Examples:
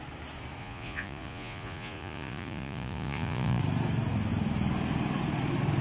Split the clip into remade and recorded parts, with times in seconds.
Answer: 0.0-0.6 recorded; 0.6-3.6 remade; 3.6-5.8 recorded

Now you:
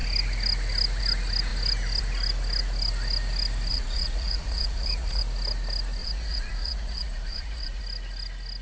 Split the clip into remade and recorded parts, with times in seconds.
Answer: 0.0-3.7 recorded; 3.7-5.2 remade; 5.2-6.0 recorded; 6.0-7.8 remade; 7.8-8.6 recorded

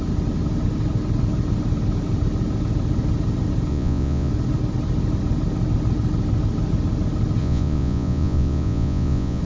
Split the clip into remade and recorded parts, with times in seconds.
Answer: 0.0-3.7 recorded; 3.7-4.3 remade; 4.3-7.4 recorded; 7.4-9.4 remade

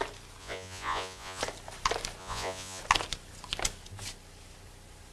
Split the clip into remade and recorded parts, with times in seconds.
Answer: 0.0-0.4 recorded; 0.4-1.4 remade; 1.4-2.2 recorded; 2.2-2.8 remade; 2.8-5.1 recorded

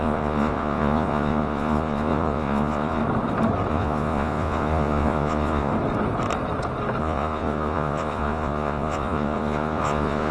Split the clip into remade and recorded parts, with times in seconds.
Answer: 0.0-3.0 remade; 3.0-3.7 recorded; 3.7-5.7 remade; 5.7-7.0 recorded; 7.0-10.3 remade

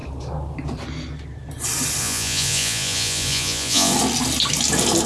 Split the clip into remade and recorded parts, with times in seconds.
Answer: 0.0-2.0 recorded; 2.0-3.9 remade; 3.9-5.1 recorded